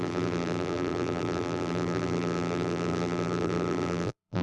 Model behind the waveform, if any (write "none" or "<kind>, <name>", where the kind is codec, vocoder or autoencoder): vocoder, BigVGAN v2